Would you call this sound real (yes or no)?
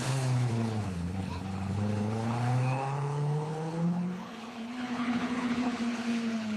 no